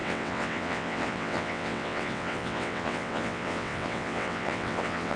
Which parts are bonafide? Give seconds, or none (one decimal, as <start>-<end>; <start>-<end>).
none